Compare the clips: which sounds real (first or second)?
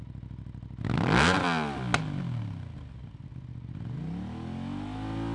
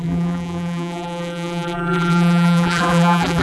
first